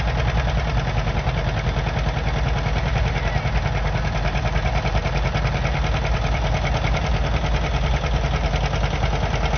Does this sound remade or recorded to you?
recorded